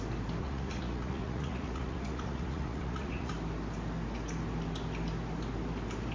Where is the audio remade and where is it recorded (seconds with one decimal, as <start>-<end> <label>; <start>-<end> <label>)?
0.0-0.4 recorded; 0.4-3.3 remade; 3.3-6.1 recorded